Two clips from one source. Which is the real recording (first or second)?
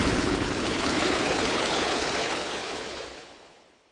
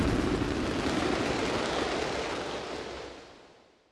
second